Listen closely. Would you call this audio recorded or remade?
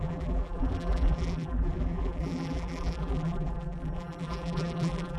remade